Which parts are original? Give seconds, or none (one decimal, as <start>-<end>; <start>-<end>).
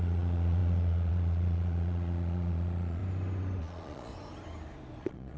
3.0-3.6; 4.1-5.0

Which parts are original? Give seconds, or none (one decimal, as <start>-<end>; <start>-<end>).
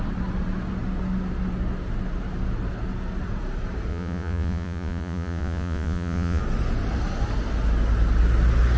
0.0-3.9; 6.4-8.8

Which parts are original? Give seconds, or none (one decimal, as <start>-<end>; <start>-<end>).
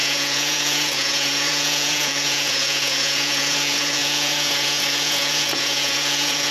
none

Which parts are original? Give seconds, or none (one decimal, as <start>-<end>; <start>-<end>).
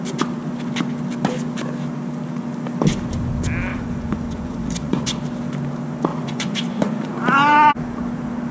0.0-3.7; 5.2-6.1; 7.1-8.5